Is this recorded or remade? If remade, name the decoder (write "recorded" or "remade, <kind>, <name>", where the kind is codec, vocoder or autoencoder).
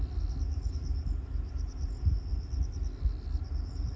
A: recorded